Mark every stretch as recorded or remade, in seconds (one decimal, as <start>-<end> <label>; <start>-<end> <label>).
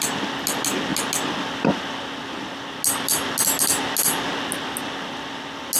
0.0-5.8 recorded